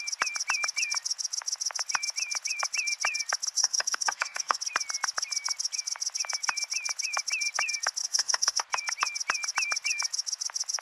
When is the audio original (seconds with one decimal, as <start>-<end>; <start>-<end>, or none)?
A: 0.0-3.6; 4.6-8.0; 8.6-10.8